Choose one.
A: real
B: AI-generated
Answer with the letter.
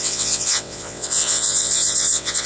B